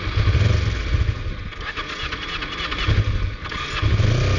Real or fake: real